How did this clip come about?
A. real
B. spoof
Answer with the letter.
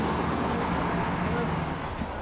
A